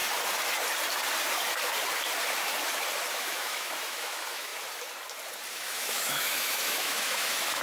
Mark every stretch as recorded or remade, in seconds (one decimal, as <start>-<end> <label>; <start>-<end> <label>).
0.0-3.1 recorded; 3.1-4.5 remade; 4.5-5.5 recorded; 5.5-7.6 remade